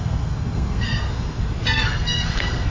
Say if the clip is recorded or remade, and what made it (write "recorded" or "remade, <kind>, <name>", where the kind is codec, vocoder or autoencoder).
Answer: remade, codec, SNAC